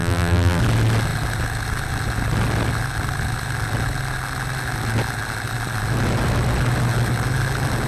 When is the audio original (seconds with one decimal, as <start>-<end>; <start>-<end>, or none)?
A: 0.6-7.9